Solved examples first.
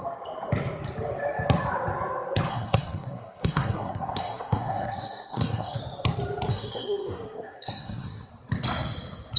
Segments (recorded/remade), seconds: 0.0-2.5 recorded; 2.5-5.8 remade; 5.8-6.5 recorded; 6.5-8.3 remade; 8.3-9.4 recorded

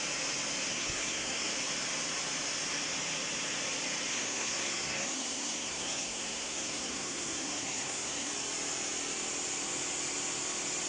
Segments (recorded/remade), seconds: 0.0-0.7 recorded; 0.7-1.5 remade; 1.5-4.1 recorded; 4.1-8.3 remade; 8.3-10.9 recorded

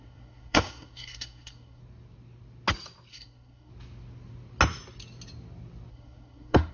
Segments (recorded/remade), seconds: 0.0-1.8 remade; 1.8-3.1 recorded; 3.1-3.7 remade; 3.7-5.9 recorded; 5.9-6.7 remade

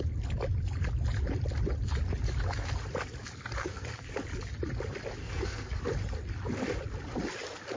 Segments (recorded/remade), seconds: 0.0-3.6 recorded; 3.6-4.1 remade; 4.1-5.2 recorded; 5.2-5.8 remade; 5.8-7.8 recorded

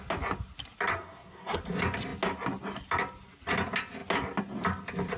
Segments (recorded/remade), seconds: 0.0-0.9 recorded; 0.9-1.6 remade; 1.6-5.2 recorded

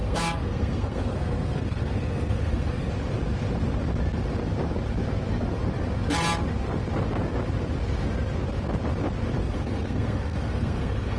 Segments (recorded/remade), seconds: 0.0-2.9 remade; 2.9-9.4 recorded; 9.4-11.2 remade